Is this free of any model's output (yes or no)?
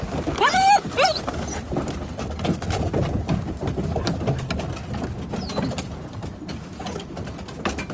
yes